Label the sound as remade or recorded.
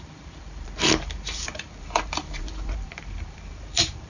remade